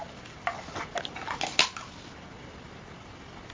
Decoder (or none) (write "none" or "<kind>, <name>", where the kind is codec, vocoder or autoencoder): none